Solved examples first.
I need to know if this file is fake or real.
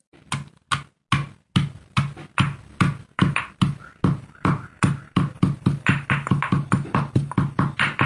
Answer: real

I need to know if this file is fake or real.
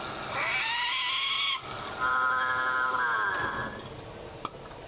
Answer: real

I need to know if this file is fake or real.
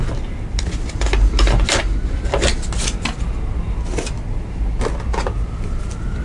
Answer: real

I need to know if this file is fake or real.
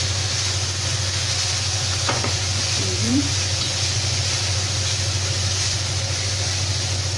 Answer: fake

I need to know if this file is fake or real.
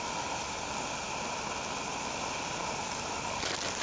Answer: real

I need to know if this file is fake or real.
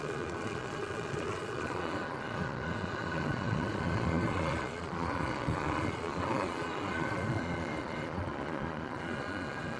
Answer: fake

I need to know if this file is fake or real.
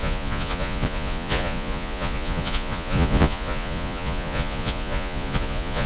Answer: fake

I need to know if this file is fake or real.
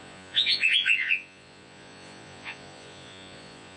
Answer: fake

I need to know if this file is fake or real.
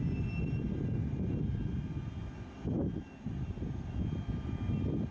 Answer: real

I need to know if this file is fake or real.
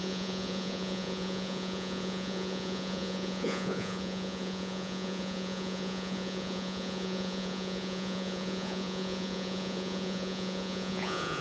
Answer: fake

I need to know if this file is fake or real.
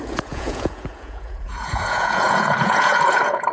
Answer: fake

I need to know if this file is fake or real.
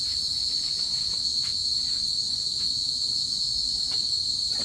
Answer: real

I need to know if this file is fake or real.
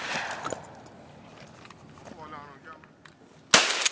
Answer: real